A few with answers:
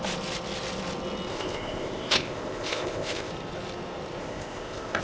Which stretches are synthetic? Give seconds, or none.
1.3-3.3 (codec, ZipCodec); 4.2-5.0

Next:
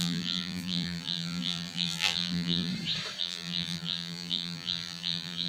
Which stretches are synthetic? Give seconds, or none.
0.0-2.7 (vocoder, BigVGAN v2); 3.2-5.5

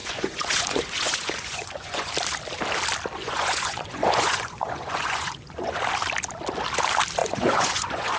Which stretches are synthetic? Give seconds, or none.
0.0-2.1 (vocoder, Vocos); 3.2-5.8; 7.2-8.2

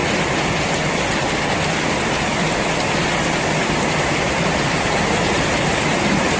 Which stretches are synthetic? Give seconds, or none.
3.2-6.4 (vocoder, BigVGAN v2)

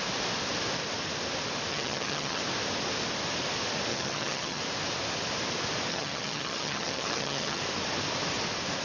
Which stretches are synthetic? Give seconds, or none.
1.7-2.4 (vocoder, HiFi-GAN); 3.9-4.6; 5.9-7.6